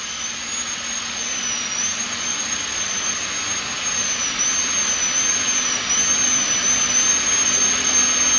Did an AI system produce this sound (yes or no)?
no